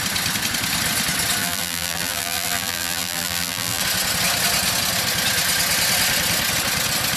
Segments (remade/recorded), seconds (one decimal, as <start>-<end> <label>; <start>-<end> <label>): 0.0-1.4 recorded; 1.4-3.8 remade; 3.8-7.2 recorded